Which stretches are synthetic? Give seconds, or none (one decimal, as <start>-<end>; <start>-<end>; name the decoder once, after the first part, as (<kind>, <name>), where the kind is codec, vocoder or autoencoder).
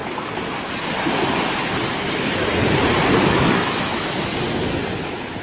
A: 3.2-4.3 (autoencoder, DAC-VAE); 5.0-5.4